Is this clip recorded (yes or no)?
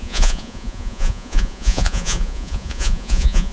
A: no